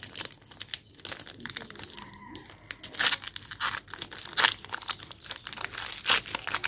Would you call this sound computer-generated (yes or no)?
no